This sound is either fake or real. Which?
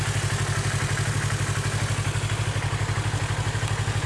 real